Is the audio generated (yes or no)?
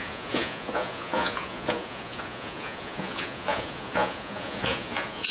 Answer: yes